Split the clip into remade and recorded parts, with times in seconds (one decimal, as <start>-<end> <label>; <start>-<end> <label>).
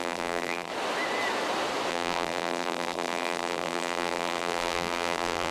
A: 0.0-0.7 remade; 0.7-1.9 recorded; 1.9-5.5 remade